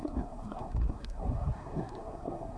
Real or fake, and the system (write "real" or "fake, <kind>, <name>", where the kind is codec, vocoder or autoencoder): fake, codec, SNAC